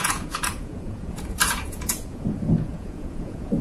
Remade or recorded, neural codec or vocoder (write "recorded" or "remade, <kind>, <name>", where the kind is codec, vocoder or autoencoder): remade, vocoder, Vocos